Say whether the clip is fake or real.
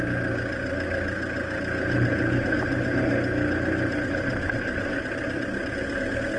real